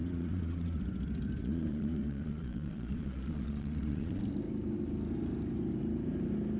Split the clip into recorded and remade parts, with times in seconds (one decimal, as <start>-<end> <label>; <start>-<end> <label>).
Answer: 0.0-0.8 remade; 0.8-1.4 recorded; 1.4-4.2 remade; 4.2-6.6 recorded